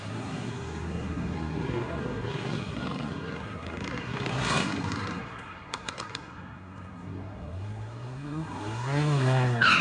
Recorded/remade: remade